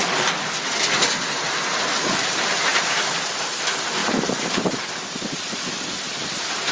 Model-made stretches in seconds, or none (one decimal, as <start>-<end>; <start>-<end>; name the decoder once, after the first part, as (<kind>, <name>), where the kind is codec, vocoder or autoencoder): 2.7-3.6 (vocoder, BigVGAN v2); 4.0-5.6